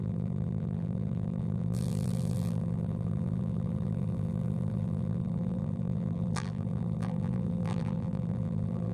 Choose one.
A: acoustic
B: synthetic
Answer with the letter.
B